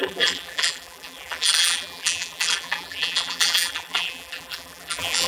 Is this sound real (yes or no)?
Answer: no